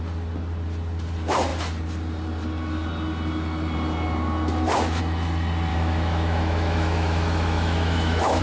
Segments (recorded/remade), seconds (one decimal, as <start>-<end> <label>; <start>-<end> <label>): 0.0-5.7 recorded; 5.7-8.4 remade